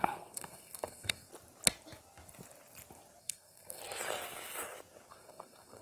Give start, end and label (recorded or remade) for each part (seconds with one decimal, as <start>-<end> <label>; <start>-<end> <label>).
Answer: 0.0-1.3 remade; 1.3-3.2 recorded; 3.2-3.8 remade; 3.8-5.1 recorded; 5.1-5.8 remade